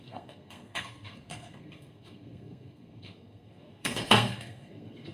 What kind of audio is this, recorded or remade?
remade